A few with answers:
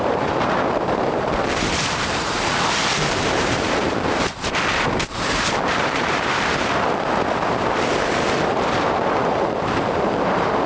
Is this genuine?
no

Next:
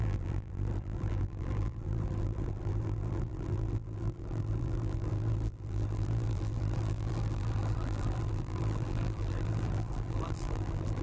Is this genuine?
no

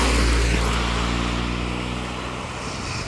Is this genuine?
yes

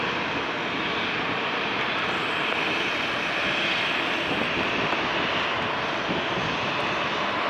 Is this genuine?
yes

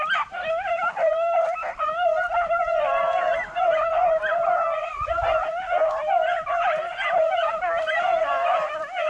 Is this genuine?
no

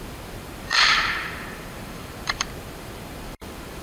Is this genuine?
no